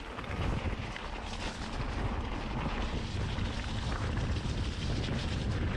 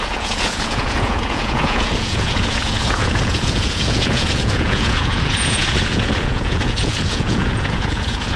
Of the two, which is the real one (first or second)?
first